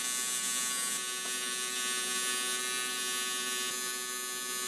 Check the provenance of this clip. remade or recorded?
recorded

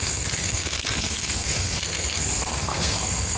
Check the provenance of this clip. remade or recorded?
remade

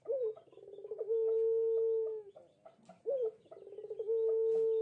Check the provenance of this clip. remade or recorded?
recorded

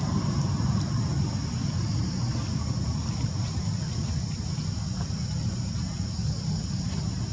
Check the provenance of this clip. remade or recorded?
recorded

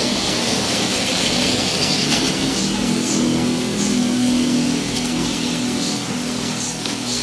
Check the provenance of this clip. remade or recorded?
remade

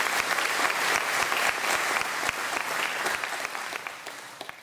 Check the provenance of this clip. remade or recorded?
recorded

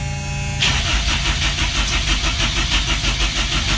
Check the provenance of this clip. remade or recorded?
recorded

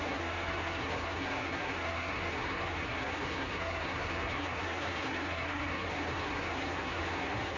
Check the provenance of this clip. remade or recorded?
remade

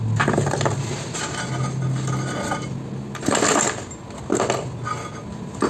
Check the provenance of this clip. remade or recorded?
recorded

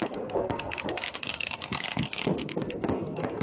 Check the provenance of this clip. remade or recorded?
remade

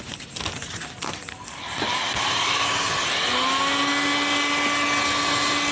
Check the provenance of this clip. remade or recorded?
recorded